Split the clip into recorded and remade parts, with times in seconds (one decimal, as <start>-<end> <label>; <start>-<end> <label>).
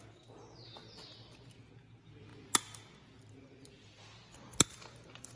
0.0-5.4 recorded